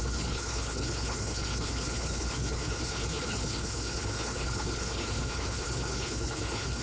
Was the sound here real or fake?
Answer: fake